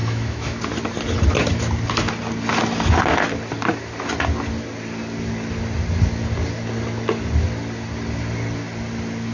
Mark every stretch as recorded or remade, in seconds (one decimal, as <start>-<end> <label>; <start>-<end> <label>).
0.0-0.6 remade; 0.6-9.3 recorded